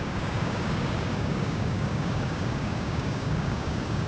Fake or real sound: fake